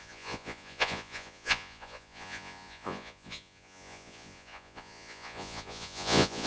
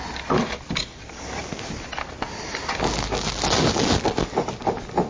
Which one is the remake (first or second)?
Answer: first